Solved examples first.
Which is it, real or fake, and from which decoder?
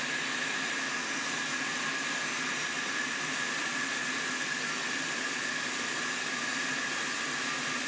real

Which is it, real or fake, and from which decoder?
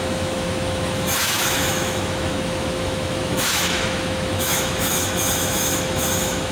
fake, autoencoder, DAC-VAE